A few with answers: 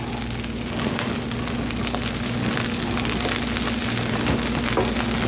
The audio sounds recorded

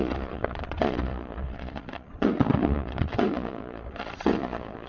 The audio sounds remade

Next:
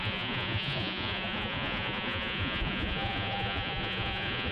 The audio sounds remade